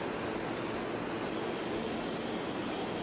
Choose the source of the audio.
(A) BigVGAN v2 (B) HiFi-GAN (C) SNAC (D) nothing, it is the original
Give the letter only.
D